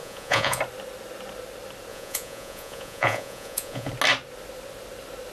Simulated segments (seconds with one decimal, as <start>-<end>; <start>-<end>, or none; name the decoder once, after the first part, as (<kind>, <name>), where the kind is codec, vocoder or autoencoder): 0.0-0.6 (vocoder, Vocos); 1.9-3.9